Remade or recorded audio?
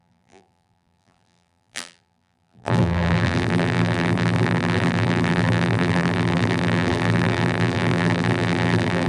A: remade